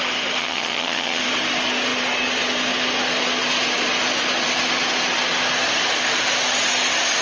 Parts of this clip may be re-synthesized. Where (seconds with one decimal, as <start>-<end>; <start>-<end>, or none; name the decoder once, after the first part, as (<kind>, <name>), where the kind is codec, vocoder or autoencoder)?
0.4-1.2 (vocoder, HiFi-GAN)